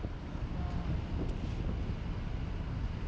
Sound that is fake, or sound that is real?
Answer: real